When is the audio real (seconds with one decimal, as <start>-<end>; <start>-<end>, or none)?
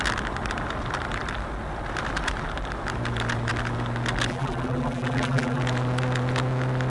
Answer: 0.0-4.3; 5.6-6.9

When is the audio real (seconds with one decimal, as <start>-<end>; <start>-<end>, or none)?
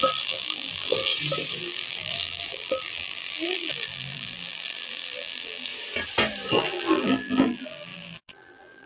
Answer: 1.1-1.6; 5.7-6.5